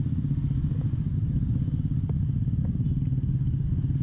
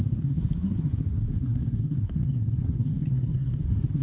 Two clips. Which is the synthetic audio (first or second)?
second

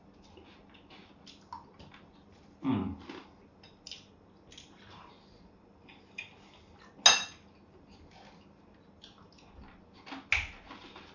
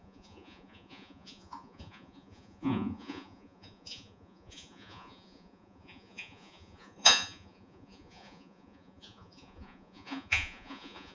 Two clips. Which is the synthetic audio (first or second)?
second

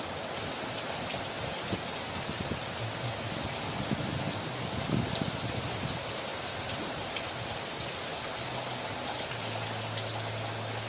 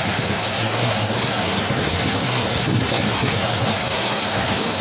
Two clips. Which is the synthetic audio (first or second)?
second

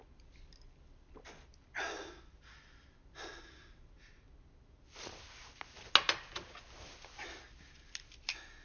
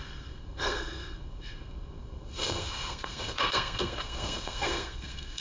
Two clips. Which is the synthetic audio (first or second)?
second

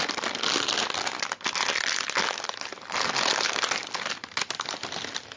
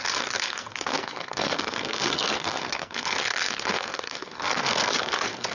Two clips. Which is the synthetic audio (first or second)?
second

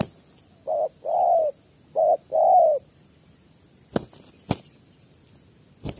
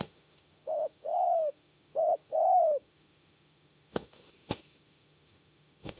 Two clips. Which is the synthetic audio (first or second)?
second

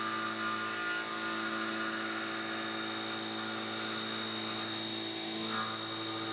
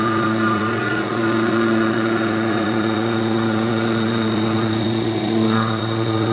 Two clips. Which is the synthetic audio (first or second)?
second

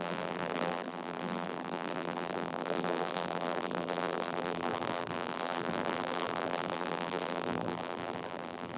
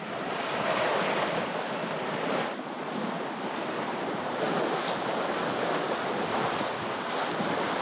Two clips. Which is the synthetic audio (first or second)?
first